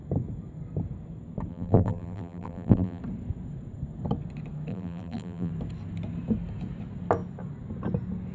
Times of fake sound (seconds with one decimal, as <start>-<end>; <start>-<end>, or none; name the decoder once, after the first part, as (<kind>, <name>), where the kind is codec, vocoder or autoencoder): 1.5-3.0 (vocoder, BigVGAN v2); 4.7-5.5